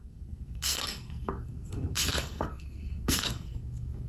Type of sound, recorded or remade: remade